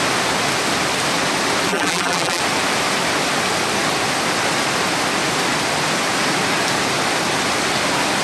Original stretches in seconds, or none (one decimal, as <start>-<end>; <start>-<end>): 0.0-1.7; 2.4-8.2